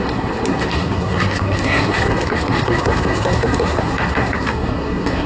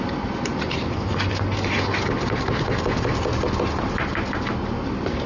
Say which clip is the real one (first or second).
second